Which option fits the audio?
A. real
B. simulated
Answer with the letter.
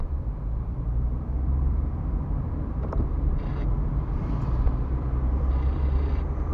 B